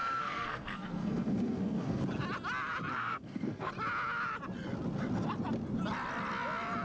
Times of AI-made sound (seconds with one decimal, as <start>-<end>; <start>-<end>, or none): 0.0-2.0; 2.9-3.7